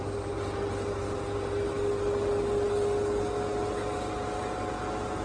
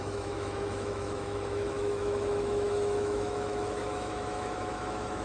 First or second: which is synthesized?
second